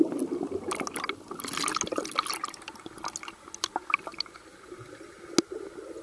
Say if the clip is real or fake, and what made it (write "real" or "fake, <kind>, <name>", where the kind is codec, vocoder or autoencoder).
real